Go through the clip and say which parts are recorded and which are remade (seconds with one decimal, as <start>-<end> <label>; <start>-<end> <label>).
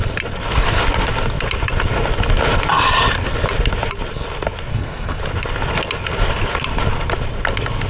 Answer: 0.0-4.7 recorded; 4.7-5.2 remade; 5.2-7.9 recorded